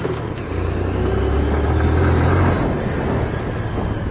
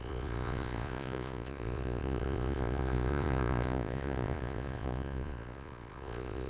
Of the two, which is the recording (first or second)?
first